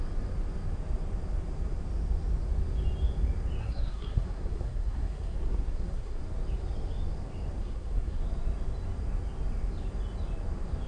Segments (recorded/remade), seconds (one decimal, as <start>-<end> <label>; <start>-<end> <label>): 0.0-3.6 recorded; 3.6-6.2 remade; 6.2-7.6 recorded; 7.6-8.2 remade; 8.2-10.9 recorded